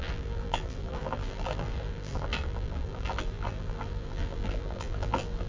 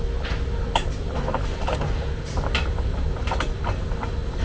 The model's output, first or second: first